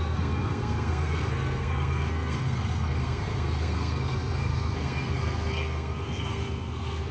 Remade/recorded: remade